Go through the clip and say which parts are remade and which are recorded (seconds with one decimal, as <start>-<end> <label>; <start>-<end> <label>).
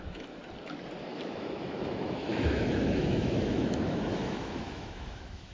0.0-0.4 remade; 0.4-1.0 recorded; 1.0-5.5 remade